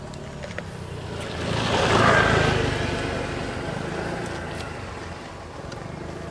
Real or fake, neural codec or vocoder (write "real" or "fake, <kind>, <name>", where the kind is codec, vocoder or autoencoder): real